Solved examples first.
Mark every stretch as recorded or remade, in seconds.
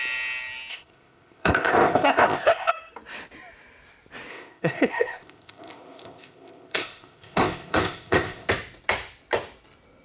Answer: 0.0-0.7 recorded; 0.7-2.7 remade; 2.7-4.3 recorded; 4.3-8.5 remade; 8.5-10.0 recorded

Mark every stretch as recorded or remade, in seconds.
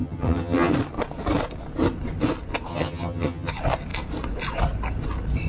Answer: 0.0-0.7 remade; 0.7-2.7 recorded; 2.7-3.5 remade; 3.5-5.5 recorded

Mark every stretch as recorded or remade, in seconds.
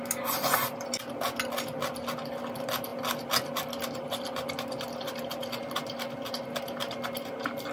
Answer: 0.0-7.7 recorded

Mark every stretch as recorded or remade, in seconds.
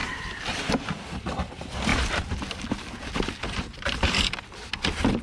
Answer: 0.0-1.5 remade; 1.5-1.9 recorded; 1.9-4.7 remade; 4.7-5.2 recorded